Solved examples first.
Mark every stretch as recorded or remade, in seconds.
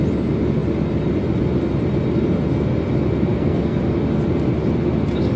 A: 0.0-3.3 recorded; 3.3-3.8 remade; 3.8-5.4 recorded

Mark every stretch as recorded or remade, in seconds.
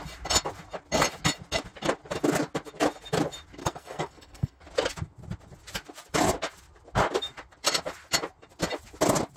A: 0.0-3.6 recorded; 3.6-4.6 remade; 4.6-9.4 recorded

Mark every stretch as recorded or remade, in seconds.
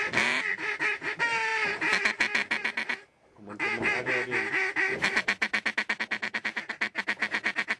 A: 0.0-7.8 recorded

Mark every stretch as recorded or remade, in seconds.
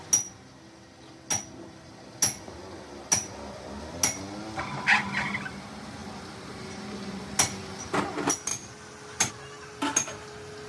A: 0.0-10.7 recorded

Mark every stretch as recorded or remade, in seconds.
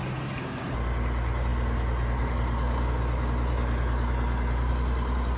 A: 0.0-5.4 recorded